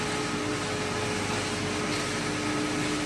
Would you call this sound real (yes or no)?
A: yes